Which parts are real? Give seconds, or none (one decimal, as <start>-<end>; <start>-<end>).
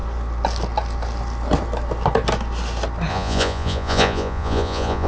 0.0-3.1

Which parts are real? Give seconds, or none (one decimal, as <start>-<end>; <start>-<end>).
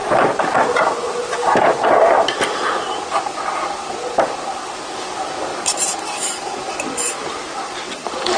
1.9-5.5; 6.7-8.4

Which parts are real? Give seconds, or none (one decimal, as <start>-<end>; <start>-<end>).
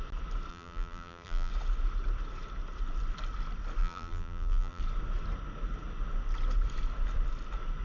0.0-0.5; 1.5-3.8; 4.8-7.8